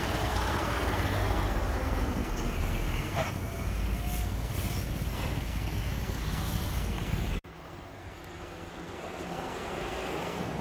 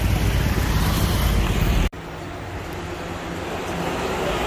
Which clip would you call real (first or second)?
second